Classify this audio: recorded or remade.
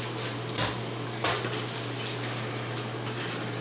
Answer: recorded